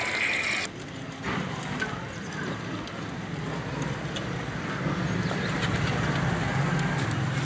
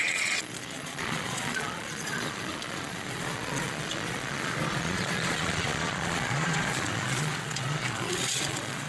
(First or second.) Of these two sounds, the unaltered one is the first